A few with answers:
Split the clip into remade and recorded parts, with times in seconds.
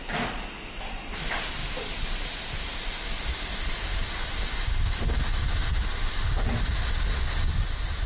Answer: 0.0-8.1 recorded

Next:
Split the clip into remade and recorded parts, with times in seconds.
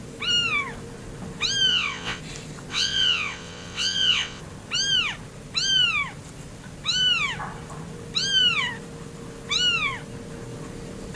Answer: 0.0-1.7 recorded; 1.7-2.2 remade; 2.2-2.7 recorded; 2.7-4.4 remade; 4.4-11.2 recorded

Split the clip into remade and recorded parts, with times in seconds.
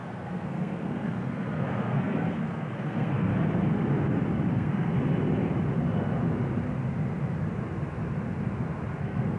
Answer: 0.0-3.3 remade; 3.3-4.5 recorded; 4.5-4.9 remade; 4.9-9.0 recorded; 9.0-9.4 remade